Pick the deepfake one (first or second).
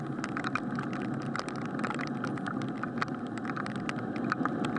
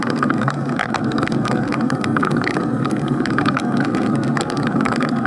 second